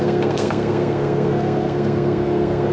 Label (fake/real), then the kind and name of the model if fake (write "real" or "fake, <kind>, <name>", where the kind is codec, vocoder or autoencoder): fake, codec, SNAC